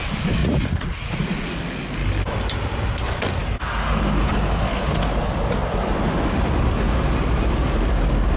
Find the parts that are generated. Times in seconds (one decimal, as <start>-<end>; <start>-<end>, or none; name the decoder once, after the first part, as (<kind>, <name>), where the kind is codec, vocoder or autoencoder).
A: 0.4-1.5 (vocoder, Vocos)